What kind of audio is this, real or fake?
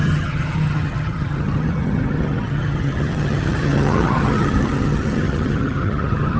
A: fake